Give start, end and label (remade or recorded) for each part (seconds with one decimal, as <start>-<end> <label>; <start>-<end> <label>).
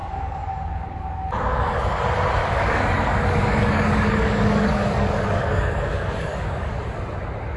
0.0-2.0 remade; 2.0-2.4 recorded; 2.4-6.8 remade; 6.8-7.6 recorded